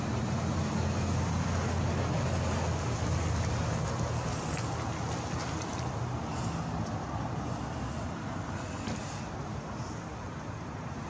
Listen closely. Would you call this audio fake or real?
real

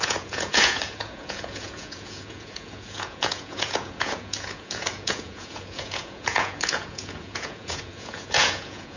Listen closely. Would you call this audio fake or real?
fake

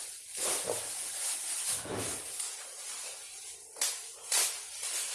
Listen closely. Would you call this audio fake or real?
real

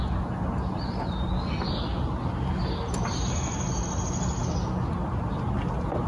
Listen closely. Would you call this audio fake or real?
real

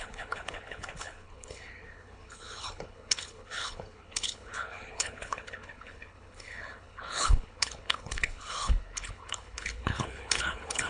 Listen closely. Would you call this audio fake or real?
fake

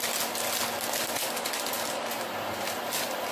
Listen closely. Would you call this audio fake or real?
real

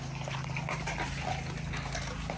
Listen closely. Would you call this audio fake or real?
real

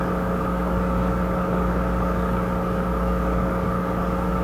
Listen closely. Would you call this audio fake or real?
fake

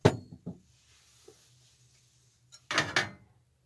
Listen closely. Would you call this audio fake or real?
real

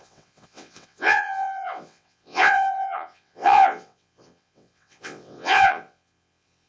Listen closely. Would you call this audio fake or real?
fake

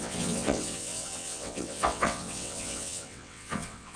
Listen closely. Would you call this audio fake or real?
fake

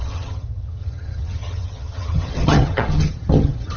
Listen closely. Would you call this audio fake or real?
fake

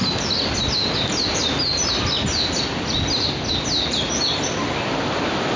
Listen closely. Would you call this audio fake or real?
real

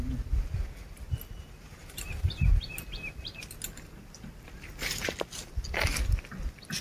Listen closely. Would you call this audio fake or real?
real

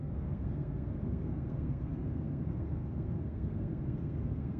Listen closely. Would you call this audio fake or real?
fake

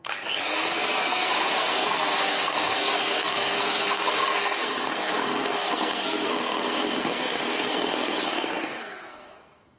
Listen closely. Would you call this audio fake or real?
fake